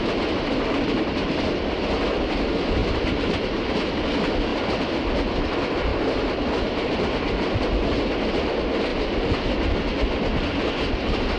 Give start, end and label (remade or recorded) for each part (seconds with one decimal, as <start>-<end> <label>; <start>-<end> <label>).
0.0-2.8 recorded; 2.8-3.8 remade; 3.8-5.9 recorded; 5.9-7.4 remade; 7.4-11.4 recorded